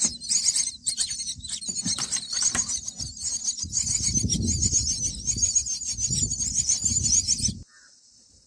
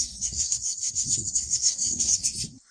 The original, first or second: first